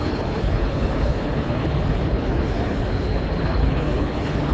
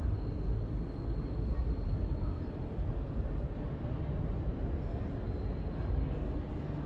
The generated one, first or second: first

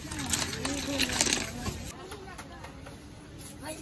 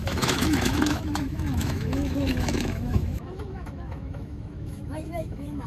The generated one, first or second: second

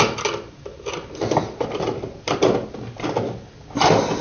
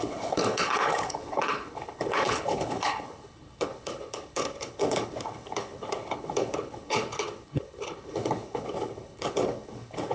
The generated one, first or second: second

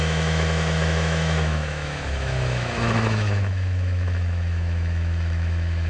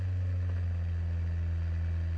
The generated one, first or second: first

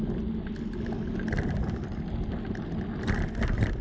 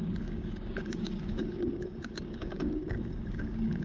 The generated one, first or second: second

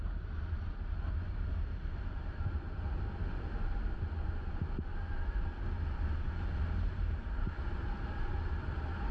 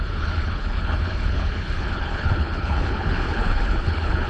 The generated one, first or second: second